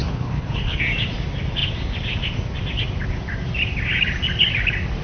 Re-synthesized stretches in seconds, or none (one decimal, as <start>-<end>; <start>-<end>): 0.0-0.8